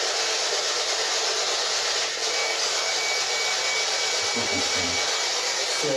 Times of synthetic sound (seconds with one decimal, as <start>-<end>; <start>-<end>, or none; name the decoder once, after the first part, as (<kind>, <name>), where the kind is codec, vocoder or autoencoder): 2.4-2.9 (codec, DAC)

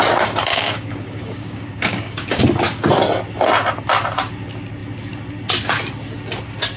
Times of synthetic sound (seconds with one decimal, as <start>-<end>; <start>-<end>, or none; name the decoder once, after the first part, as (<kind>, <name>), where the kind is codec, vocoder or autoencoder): 0.5-2.4 (codec, DAC)

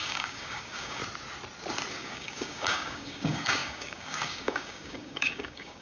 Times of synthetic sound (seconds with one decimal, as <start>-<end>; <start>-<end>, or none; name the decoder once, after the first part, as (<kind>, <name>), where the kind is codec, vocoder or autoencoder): 0.0-1.0 (codec, DAC); 1.9-5.8

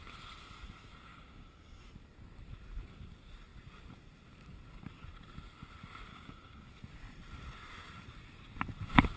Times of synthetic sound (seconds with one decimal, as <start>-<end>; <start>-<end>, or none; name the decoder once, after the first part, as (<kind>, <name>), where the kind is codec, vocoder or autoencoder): 1.1-1.8 (codec, DAC); 6.1-6.7

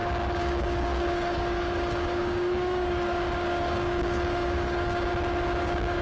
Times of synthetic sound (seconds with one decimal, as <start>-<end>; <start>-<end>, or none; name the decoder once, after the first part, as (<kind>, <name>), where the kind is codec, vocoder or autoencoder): 0.0-5.1 (codec, DAC); 5.6-6.0

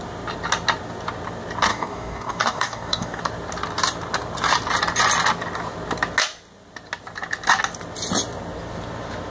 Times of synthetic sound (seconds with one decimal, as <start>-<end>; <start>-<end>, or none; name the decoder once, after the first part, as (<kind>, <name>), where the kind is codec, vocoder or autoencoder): 1.7-3.2 (codec, DAC)

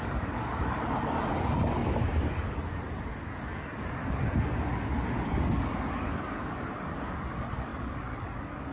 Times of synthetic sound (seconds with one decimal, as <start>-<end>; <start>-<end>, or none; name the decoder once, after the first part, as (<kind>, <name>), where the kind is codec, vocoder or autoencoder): 0.0-8.7 (codec, DAC)

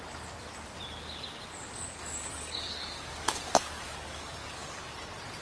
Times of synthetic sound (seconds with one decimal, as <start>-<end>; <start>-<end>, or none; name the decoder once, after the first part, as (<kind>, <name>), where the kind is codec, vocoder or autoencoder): 1.6-4.8 (codec, DAC)